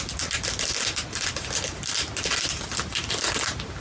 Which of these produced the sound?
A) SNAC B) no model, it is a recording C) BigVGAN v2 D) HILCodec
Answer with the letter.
B